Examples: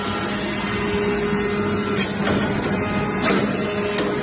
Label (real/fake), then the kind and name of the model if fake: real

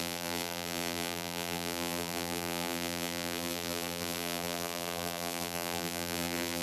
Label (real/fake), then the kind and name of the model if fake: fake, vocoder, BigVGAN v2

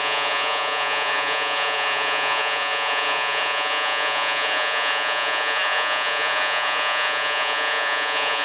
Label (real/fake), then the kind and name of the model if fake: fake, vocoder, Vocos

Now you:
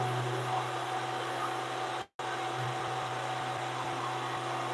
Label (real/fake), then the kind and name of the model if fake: real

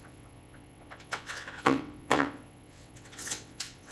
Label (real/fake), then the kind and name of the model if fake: fake, vocoder, WaveNeXt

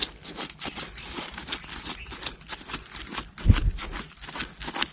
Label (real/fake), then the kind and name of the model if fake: real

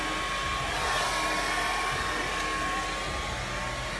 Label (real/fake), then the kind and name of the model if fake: real